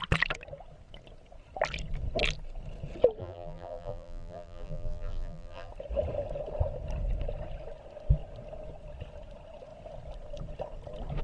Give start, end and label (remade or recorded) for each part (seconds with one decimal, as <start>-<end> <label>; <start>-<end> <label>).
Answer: 0.0-3.2 recorded; 3.2-5.7 remade; 5.7-11.2 recorded